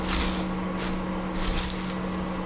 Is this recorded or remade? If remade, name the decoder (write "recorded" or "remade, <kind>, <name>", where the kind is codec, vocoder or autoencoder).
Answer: recorded